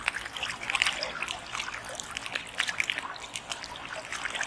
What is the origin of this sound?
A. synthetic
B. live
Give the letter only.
B